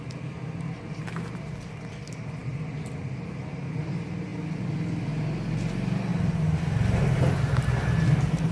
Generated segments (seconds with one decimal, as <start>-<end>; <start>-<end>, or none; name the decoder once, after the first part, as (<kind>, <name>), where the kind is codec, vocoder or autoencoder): none